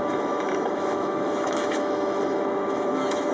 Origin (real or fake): fake